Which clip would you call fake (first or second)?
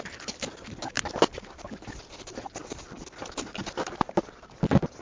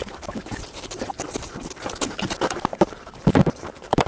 second